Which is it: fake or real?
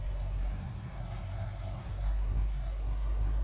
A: fake